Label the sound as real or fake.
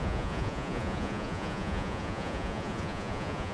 fake